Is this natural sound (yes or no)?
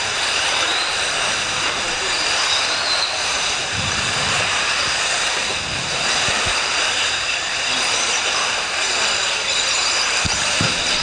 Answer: no